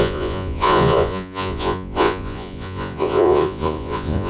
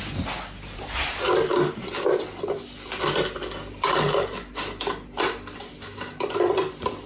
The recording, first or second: second